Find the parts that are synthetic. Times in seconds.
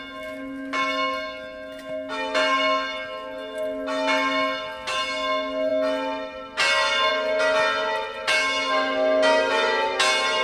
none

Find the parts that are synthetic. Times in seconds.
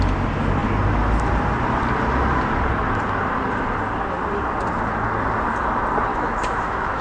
6.1-7.0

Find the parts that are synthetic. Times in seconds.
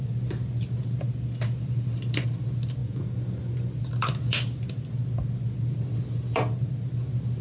2.8-3.7